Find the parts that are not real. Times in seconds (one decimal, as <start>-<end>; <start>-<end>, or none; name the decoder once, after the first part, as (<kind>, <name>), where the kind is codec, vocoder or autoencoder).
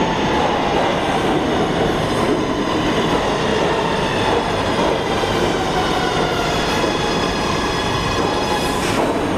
1.5-2.3 (vocoder, BigVGAN v2); 3.5-7.7